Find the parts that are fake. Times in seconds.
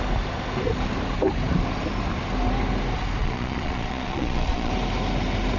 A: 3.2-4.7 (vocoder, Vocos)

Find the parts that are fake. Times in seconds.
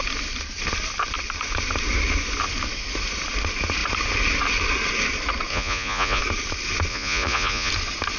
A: 5.5-6.2 (vocoder, Vocos); 6.9-7.7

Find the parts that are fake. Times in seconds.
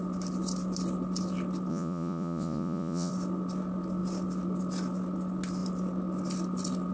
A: 1.7-3.1 (vocoder, Vocos)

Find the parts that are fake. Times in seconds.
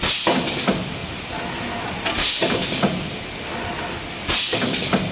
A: none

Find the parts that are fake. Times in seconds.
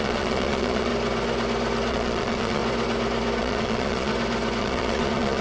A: 0.0-0.9 (vocoder, Vocos); 1.9-2.6; 3.4-4.1; 4.6-5.4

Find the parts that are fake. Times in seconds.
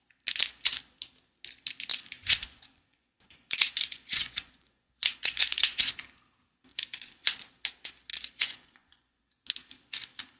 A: 1.9-5.9 (vocoder, Vocos); 6.7-7.5; 8.1-9.2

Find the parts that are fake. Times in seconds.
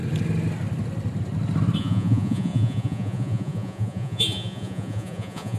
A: 1.8-5.6 (vocoder, Vocos)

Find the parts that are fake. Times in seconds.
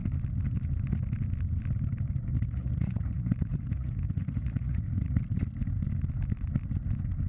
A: 2.3-5.2 (vocoder, Vocos)